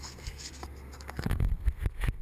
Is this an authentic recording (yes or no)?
no